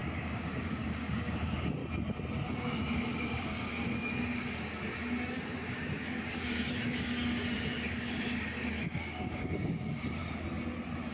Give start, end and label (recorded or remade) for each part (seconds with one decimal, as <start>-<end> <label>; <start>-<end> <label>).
0.0-1.8 remade; 1.8-2.5 recorded; 2.5-10.2 remade; 10.2-11.1 recorded